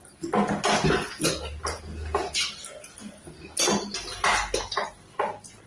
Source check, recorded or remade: recorded